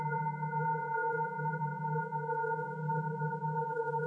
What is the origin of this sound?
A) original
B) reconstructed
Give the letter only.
B